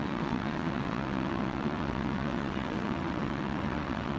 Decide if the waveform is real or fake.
fake